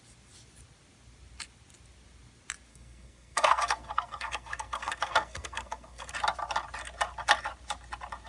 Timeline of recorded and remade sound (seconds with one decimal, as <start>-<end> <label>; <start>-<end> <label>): 0.0-2.7 recorded; 2.7-6.1 remade; 6.1-8.3 recorded